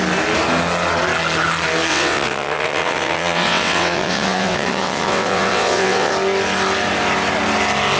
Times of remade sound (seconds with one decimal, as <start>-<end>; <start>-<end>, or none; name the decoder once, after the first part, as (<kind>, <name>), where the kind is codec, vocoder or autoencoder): 1.9-6.1 (vocoder, WaveNeXt)